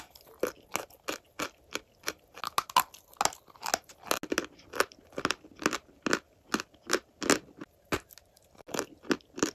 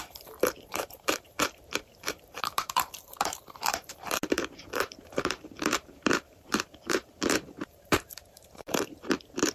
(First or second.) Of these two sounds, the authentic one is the first